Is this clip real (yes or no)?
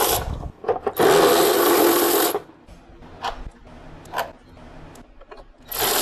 yes